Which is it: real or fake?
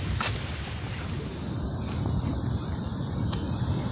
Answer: real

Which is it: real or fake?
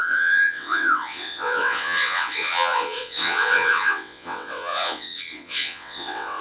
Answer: fake